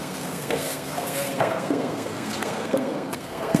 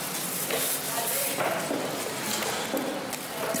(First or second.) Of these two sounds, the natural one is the second